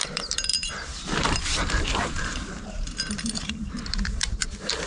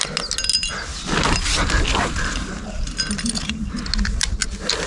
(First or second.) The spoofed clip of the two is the first